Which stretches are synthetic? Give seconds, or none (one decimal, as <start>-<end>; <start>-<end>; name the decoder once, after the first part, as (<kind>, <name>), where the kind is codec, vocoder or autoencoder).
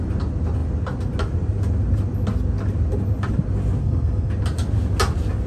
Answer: 3.8-4.3 (codec, SNAC)